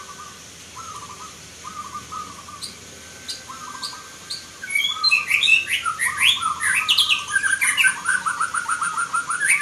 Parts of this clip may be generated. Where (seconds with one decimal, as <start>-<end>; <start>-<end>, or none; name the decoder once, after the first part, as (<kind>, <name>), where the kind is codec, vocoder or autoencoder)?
none